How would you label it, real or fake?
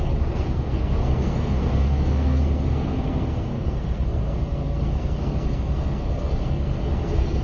fake